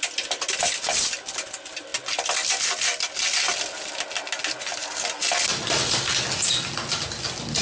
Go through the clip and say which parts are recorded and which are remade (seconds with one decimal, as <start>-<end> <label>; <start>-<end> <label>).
0.0-7.6 recorded